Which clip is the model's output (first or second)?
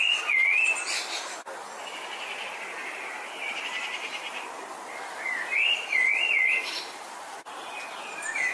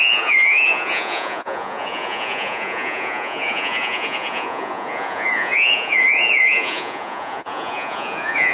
second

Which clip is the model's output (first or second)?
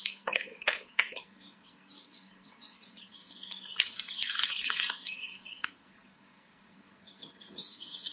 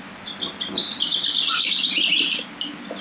first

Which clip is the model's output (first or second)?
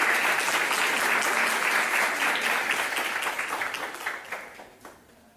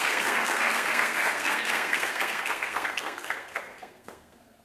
second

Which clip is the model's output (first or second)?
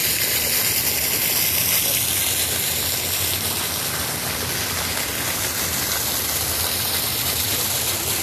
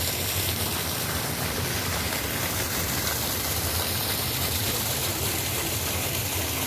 second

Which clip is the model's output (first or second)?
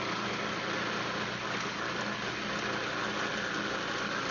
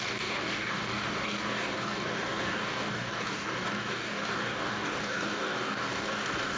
second